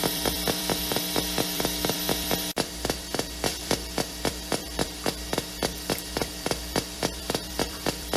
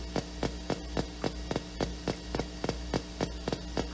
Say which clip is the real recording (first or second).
second